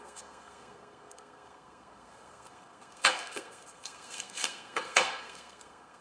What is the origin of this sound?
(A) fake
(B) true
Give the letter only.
A